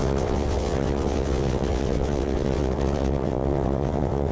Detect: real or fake fake